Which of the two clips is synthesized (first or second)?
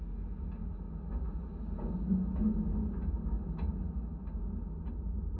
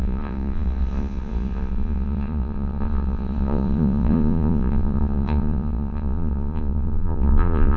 second